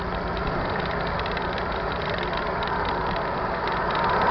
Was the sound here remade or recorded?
recorded